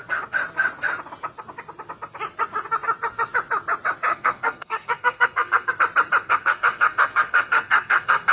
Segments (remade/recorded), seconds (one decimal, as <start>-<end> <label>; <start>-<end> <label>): 0.0-4.1 recorded; 4.1-5.7 remade; 5.7-6.2 recorded; 6.2-8.3 remade